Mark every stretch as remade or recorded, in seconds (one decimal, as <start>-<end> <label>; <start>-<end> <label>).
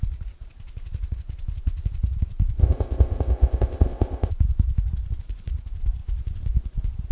0.0-2.6 recorded; 2.6-4.3 remade; 4.3-7.1 recorded